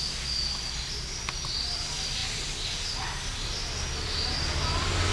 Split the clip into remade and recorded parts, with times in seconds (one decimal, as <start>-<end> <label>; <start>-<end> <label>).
0.0-5.1 recorded